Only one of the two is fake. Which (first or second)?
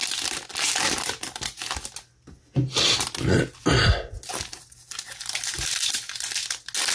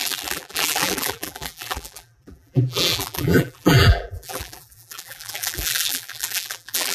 second